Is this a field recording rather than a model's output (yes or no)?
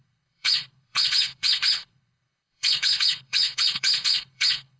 no